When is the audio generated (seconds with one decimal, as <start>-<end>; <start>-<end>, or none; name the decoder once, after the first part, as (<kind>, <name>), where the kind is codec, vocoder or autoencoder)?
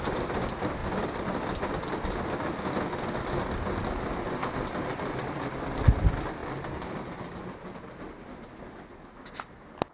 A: none